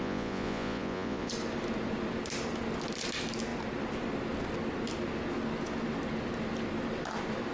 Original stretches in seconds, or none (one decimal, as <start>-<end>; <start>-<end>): 1.3-7.5